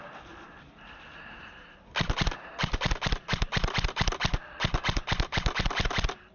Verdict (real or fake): real